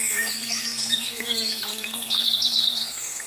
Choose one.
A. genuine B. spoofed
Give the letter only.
B